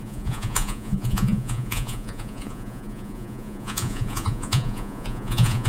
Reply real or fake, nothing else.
fake